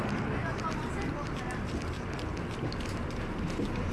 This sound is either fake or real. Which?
real